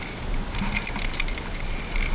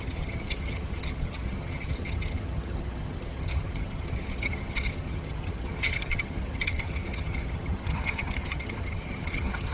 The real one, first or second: first